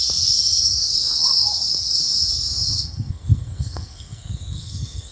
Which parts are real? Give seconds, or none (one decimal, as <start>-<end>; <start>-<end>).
none